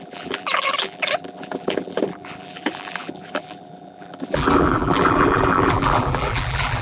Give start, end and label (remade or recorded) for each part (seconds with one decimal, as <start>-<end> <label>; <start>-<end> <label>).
0.0-6.8 remade

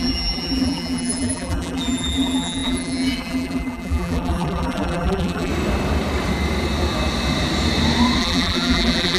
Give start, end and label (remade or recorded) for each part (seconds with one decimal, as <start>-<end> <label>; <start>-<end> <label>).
0.0-5.5 remade; 5.5-8.2 recorded; 8.2-9.2 remade

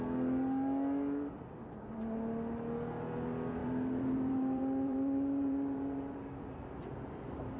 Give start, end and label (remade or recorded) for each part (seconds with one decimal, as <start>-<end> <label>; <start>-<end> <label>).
0.0-3.6 recorded; 3.6-7.6 remade

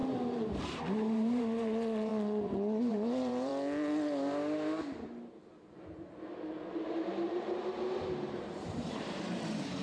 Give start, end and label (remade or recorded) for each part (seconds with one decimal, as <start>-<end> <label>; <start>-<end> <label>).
0.0-2.1 remade; 2.1-2.8 recorded; 2.8-3.5 remade; 3.5-7.1 recorded; 7.1-9.8 remade

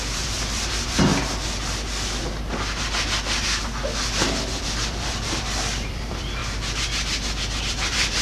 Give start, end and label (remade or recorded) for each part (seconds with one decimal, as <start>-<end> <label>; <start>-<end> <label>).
0.0-1.1 remade; 1.1-4.6 recorded; 4.6-6.4 remade; 6.4-7.6 recorded; 7.6-8.2 remade

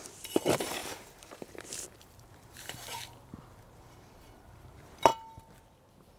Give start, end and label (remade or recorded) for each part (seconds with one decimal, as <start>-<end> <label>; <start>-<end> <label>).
0.0-5.1 remade; 5.1-6.2 recorded

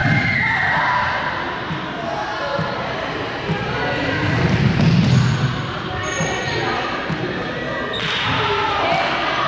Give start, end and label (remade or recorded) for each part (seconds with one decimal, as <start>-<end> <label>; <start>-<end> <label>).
0.0-9.5 recorded

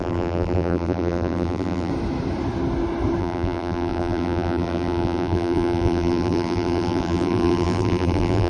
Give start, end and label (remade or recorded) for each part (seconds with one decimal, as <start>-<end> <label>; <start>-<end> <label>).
0.0-1.9 remade; 1.9-3.2 recorded; 3.2-8.5 remade